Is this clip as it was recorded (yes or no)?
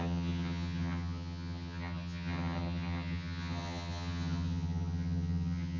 no